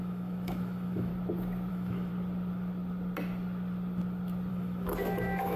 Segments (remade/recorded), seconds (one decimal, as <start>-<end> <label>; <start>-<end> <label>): 0.0-1.1 remade; 1.1-1.7 recorded; 1.7-2.1 remade; 2.1-4.5 recorded; 4.5-5.6 remade